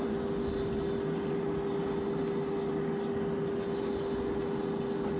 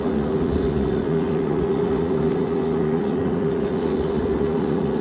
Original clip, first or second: first